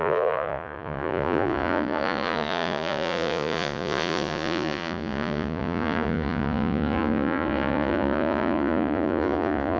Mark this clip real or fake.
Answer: fake